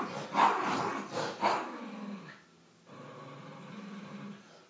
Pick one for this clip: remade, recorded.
recorded